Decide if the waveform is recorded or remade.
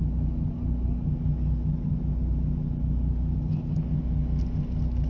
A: recorded